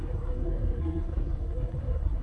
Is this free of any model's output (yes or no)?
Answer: no